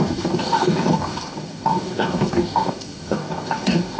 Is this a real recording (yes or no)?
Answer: no